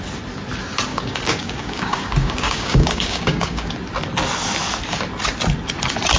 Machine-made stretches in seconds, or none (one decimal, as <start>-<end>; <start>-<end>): 0.9-3.7